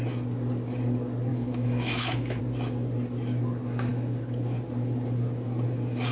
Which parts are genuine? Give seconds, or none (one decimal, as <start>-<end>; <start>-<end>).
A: 0.0-1.3; 2.4-6.1